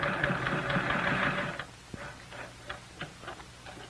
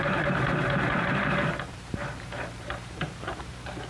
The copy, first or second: second